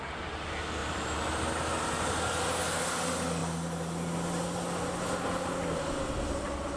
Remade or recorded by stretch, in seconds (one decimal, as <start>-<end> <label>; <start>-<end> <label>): 0.0-0.8 recorded; 0.8-1.4 remade; 1.4-6.8 recorded